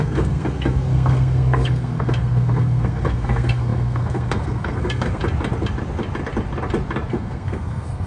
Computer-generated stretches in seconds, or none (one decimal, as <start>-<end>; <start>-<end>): 0.0-5.2; 7.1-8.1